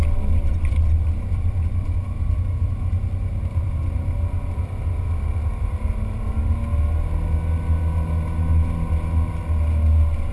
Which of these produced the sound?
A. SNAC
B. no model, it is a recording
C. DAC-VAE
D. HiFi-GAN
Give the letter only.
B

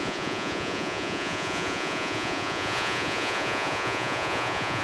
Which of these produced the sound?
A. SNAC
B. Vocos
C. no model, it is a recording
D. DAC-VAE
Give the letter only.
B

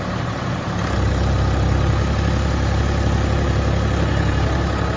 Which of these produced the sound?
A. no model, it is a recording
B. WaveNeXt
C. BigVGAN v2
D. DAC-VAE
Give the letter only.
A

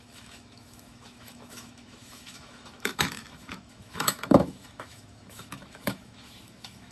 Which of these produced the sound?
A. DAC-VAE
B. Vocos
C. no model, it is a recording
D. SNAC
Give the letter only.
A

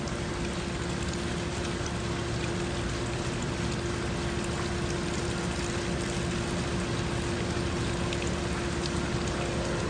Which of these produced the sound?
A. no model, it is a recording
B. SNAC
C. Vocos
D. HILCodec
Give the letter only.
A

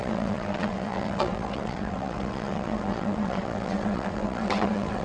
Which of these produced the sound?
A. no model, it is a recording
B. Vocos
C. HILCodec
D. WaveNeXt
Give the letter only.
D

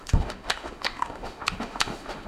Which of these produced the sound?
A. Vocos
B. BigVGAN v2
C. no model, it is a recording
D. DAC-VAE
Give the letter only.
D